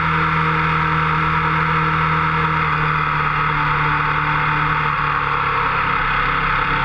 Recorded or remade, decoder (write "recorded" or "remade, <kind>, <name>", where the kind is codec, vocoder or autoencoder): recorded